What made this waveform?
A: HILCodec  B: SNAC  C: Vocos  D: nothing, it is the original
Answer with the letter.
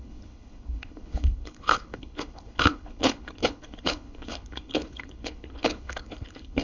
A